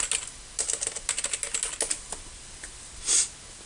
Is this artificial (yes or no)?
no